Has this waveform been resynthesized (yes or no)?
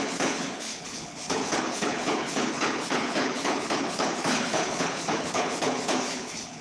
yes